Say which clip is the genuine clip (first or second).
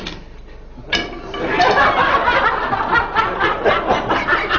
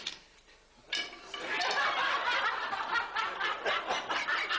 first